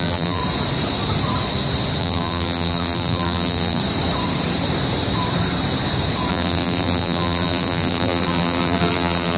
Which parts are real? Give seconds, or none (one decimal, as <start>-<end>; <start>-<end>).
0.4-2.0; 3.8-6.3